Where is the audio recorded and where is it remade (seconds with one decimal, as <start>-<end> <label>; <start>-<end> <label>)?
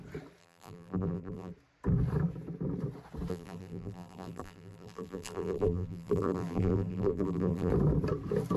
0.0-0.4 recorded; 0.4-1.5 remade; 1.5-3.3 recorded; 3.3-7.7 remade; 7.7-8.6 recorded